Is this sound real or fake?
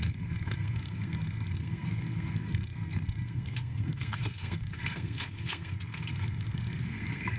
fake